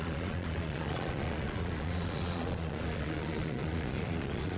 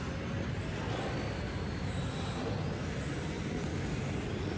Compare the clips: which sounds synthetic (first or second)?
first